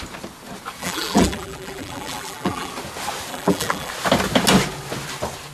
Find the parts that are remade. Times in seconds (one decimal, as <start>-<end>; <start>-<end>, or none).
0.8-2.7; 3.3-3.9